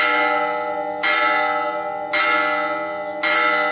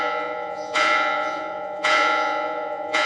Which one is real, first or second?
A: first